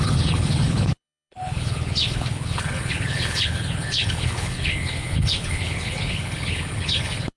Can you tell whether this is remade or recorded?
remade